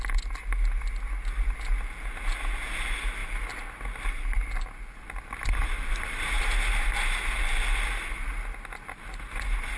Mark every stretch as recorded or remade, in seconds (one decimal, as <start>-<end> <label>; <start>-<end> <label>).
0.0-9.8 recorded